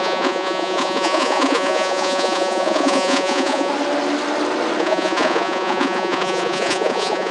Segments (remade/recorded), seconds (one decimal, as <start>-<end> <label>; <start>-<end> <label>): 0.0-3.7 remade; 3.7-4.8 recorded; 4.8-7.3 remade